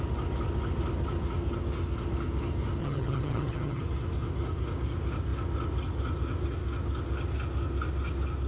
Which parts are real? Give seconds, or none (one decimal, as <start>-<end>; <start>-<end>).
0.0-2.8; 3.8-8.5